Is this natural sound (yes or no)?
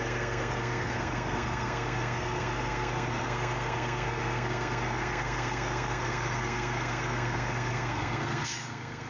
no